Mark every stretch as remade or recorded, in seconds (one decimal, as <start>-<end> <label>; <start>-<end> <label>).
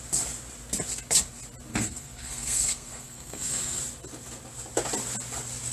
0.0-1.7 recorded; 1.7-3.8 remade; 3.8-5.7 recorded